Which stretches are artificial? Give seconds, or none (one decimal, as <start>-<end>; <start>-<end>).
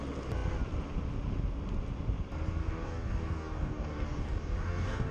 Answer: 2.6-5.1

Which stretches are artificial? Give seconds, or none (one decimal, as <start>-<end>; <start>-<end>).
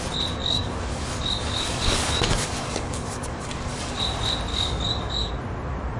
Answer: 0.4-4.0; 4.5-5.3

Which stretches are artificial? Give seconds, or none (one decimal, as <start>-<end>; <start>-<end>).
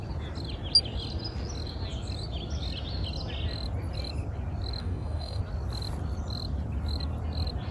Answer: 4.8-5.4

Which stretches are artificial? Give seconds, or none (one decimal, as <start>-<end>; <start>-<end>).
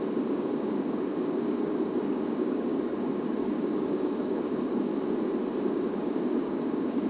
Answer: 0.0-4.9; 5.6-7.1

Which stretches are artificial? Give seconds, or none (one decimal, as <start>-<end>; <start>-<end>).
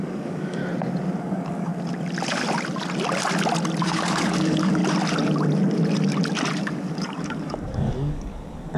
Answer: 0.0-0.6; 1.2-1.7; 3.8-4.8; 6.6-8.8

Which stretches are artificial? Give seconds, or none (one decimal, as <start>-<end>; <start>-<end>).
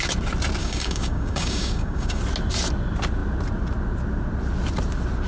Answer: 0.6-2.2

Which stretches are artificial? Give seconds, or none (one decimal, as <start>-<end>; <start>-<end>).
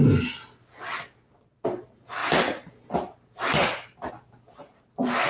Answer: none